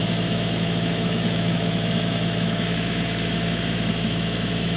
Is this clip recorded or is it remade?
remade